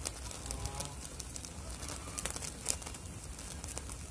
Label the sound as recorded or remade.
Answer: recorded